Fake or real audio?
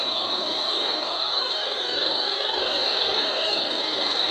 fake